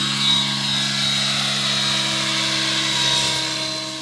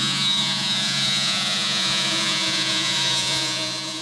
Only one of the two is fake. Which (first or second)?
second